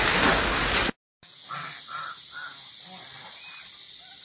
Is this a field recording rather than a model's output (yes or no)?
yes